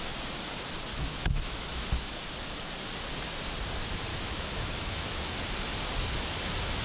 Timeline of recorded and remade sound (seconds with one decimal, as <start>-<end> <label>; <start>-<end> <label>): 0.0-0.9 recorded; 0.9-2.1 remade; 2.1-4.1 recorded; 4.1-5.3 remade; 5.3-6.8 recorded